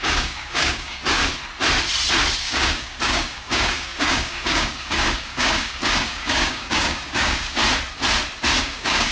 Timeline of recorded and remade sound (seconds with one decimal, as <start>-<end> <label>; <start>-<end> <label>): 0.0-1.2 remade; 1.2-2.4 recorded; 2.4-7.6 remade; 7.6-8.6 recorded; 8.6-9.1 remade